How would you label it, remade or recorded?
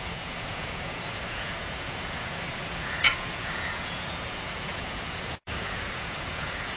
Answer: remade